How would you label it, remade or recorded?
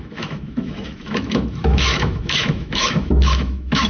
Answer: remade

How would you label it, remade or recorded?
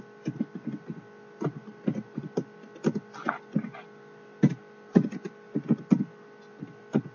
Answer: recorded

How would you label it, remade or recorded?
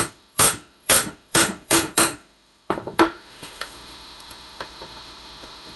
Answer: remade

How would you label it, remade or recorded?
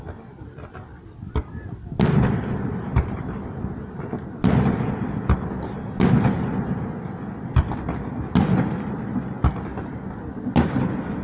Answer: recorded